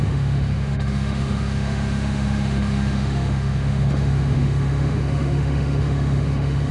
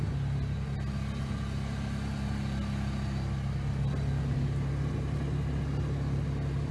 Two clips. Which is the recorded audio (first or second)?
second